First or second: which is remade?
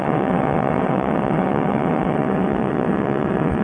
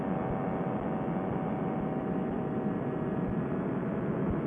first